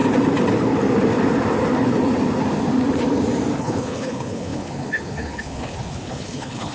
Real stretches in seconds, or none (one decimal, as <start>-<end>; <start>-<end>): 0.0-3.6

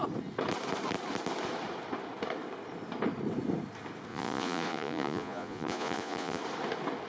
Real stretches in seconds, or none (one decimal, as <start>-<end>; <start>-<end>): 0.0-4.1; 6.4-7.1

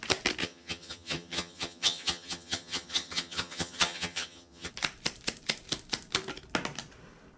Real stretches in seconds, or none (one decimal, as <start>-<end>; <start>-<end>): 0.0-0.4; 4.7-7.4